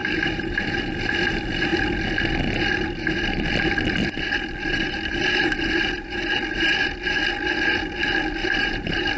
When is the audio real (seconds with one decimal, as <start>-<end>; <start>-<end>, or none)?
0.8-8.4